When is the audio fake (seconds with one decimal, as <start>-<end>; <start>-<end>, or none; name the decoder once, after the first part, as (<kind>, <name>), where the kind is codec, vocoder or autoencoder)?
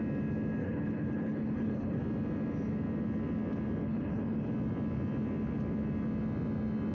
0.6-2.0 (codec, HILCodec); 3.8-4.5